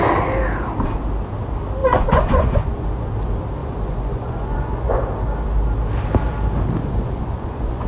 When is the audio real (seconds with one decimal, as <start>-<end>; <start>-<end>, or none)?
0.0-1.8; 3.1-3.6; 5.0-6.8